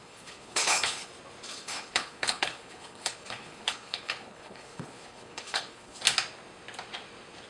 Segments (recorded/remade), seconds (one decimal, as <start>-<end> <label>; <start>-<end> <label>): 0.0-1.1 remade; 1.1-1.5 recorded; 1.5-6.0 remade; 6.0-7.5 recorded